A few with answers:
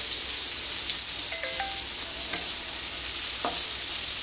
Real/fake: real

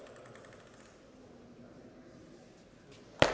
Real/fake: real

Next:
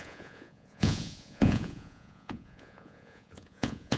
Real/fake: fake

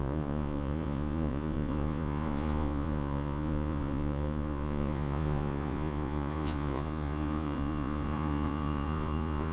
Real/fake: fake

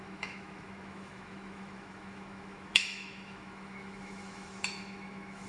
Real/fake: fake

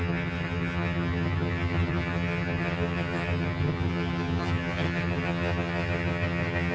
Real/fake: fake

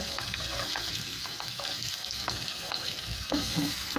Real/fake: fake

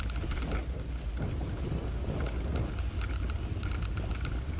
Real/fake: real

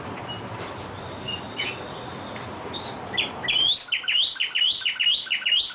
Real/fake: real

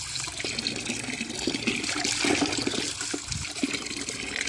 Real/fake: real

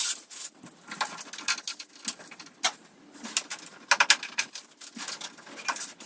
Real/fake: real